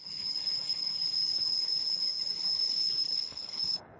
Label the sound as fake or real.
fake